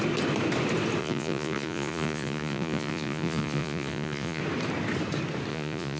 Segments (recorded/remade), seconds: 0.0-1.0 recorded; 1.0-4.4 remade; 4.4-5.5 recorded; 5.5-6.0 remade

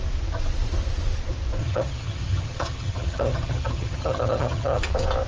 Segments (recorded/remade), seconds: 0.0-1.6 recorded; 1.6-4.8 remade; 4.8-5.3 recorded

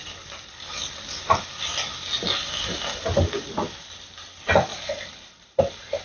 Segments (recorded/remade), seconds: 0.0-4.7 recorded; 4.7-5.6 remade; 5.6-6.0 recorded

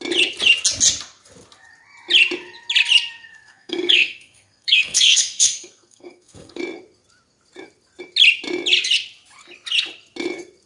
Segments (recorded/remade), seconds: 0.0-3.3 recorded; 3.3-6.6 remade; 6.6-10.7 recorded

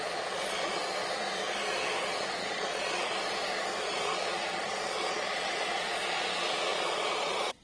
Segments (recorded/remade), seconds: 0.0-0.8 remade; 0.8-2.2 recorded; 2.2-3.2 remade; 3.2-3.8 recorded; 3.8-7.6 remade

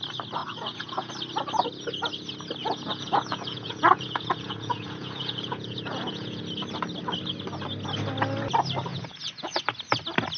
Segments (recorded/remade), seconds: 0.0-0.4 recorded; 0.4-1.1 remade; 1.1-2.6 recorded; 2.6-6.4 remade; 6.4-8.9 recorded; 8.9-9.6 remade; 9.6-10.4 recorded

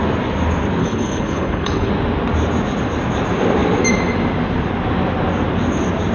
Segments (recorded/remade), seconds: 0.0-0.8 recorded; 0.8-1.9 remade; 1.9-6.1 recorded

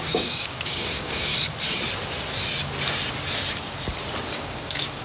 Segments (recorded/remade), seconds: 0.0-1.3 remade; 1.3-4.3 recorded; 4.3-5.0 remade